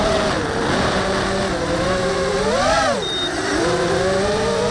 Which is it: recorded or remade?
recorded